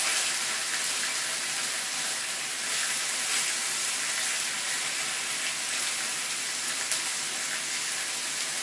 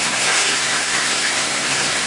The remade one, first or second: second